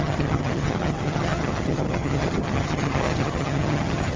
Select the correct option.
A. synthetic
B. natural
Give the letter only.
A